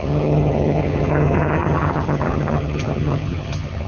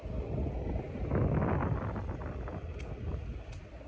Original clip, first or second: second